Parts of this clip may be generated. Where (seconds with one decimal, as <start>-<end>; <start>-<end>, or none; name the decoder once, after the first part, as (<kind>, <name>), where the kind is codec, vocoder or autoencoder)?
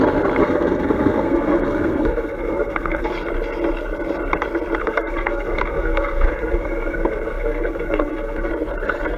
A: 0.4-3.1 (codec, SNAC); 4.8-8.5